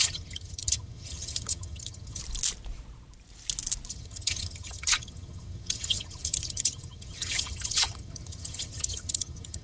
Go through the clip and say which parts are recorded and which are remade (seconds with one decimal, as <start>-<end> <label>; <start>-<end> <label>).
0.0-2.2 remade; 2.2-3.9 recorded; 3.9-9.6 remade